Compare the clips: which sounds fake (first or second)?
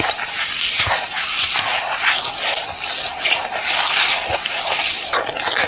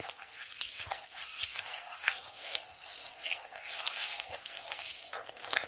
second